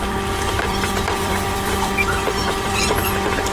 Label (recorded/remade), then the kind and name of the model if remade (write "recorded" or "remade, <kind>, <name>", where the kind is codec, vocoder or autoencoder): remade, vocoder, BigVGAN v2